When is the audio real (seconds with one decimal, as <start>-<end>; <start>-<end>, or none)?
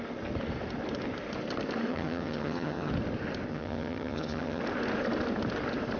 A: 0.0-1.9; 2.9-3.5; 4.6-6.0